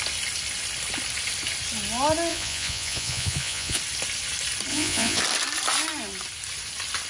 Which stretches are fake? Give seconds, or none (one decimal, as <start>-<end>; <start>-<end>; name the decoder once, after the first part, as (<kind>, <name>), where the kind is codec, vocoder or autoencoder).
2.3-3.8 (vocoder, Vocos); 4.7-5.2